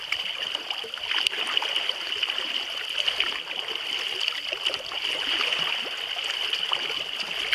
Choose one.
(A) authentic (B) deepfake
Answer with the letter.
A